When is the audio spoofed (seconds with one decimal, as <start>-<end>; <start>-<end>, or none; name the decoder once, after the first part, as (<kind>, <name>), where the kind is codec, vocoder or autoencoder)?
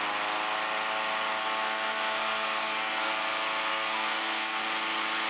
1.4-3.1 (codec, SNAC); 3.7-4.6